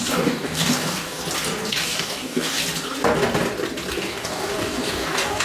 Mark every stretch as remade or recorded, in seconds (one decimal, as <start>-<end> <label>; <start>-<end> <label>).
0.0-1.2 remade; 1.2-1.7 recorded; 1.7-2.6 remade; 2.6-3.9 recorded; 3.9-5.4 remade